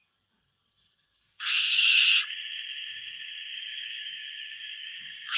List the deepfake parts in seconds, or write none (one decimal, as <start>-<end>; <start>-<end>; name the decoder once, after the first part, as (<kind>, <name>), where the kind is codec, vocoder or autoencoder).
1.7-2.3 (codec, DAC); 3.5-5.4